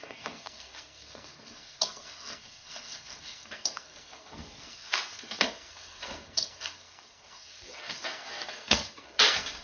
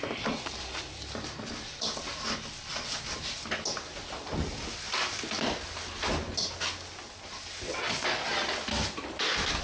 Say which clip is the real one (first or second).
second